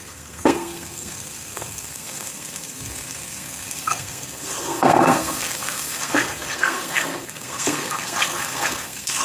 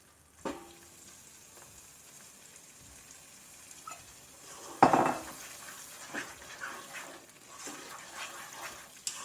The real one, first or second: second